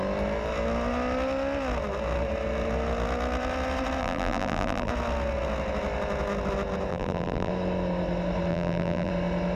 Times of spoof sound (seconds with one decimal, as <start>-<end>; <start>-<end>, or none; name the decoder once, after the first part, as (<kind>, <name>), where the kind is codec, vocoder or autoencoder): 4.0-4.9 (vocoder, BigVGAN v2); 6.9-7.5; 8.5-9.1